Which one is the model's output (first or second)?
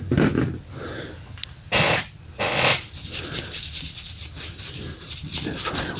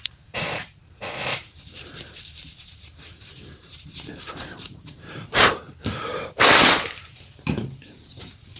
second